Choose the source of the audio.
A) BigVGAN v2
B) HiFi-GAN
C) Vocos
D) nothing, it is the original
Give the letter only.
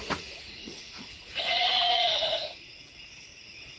C